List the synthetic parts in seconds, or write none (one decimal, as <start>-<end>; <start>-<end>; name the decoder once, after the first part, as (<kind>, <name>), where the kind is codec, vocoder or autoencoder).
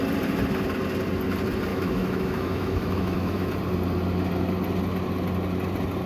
1.7-3.5 (autoencoder, DAC-VAE)